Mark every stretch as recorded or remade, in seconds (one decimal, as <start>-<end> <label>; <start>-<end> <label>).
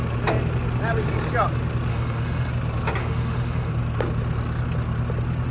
0.0-1.9 recorded; 1.9-2.5 remade; 2.5-3.0 recorded; 3.0-3.7 remade; 3.7-5.5 recorded